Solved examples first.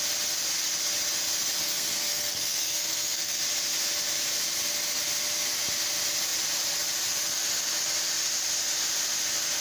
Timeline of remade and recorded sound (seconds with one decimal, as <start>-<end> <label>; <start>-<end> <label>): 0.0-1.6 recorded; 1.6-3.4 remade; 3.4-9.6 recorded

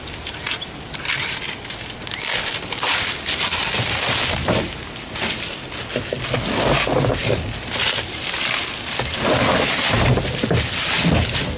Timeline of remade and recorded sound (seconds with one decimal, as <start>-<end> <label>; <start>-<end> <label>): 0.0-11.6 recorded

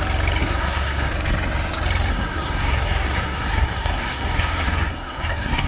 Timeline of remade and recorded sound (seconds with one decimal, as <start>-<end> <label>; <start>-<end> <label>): 0.0-0.4 recorded; 0.4-1.1 remade; 1.1-2.1 recorded; 2.1-5.7 remade